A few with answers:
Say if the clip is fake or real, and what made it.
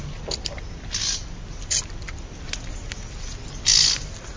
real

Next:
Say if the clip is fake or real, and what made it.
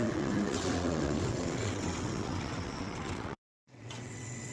fake, vocoder, WaveNeXt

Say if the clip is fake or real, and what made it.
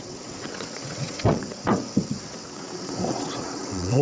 fake, vocoder, WaveNeXt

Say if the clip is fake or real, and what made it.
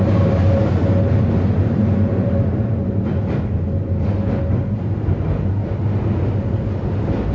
real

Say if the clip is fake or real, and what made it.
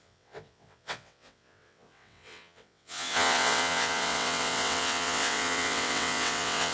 fake, vocoder, WaveNeXt